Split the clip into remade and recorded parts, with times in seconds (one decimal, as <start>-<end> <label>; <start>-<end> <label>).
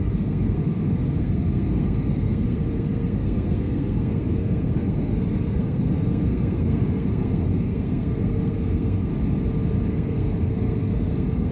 0.0-9.1 remade; 9.1-9.9 recorded; 9.9-11.5 remade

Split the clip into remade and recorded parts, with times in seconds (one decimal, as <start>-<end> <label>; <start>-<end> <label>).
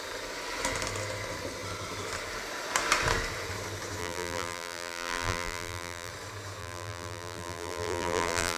0.0-4.0 recorded; 4.0-6.1 remade; 6.1-6.6 recorded; 6.6-8.6 remade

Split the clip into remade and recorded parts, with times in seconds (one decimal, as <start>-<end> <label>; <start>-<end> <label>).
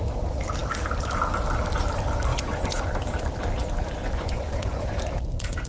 0.0-2.3 recorded; 2.3-2.9 remade; 2.9-4.0 recorded; 4.0-5.0 remade; 5.0-5.7 recorded